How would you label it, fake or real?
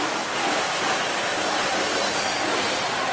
real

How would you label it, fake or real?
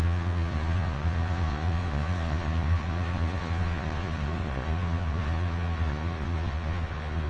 fake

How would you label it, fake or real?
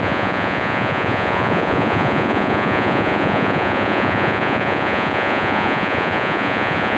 fake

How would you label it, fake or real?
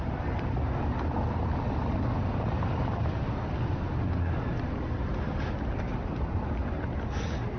real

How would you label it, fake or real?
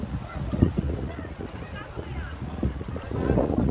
fake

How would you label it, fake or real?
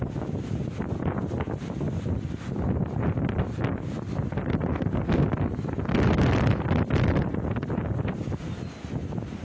real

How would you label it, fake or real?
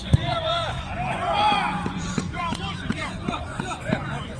fake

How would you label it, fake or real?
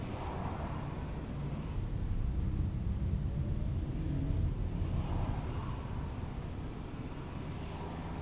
real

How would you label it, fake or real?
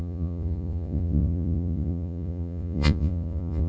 fake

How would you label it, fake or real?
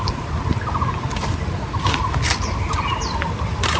real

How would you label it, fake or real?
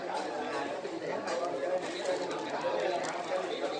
real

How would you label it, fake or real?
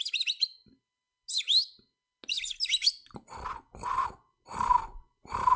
real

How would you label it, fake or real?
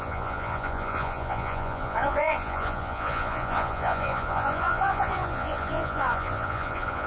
fake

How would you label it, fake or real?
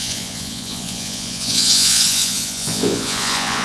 fake